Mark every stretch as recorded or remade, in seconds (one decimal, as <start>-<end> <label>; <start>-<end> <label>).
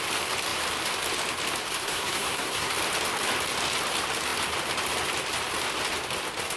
0.0-1.8 recorded; 1.8-2.7 remade; 2.7-6.6 recorded